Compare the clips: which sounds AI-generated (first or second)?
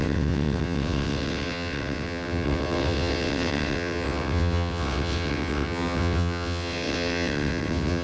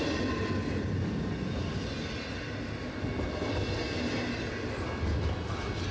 first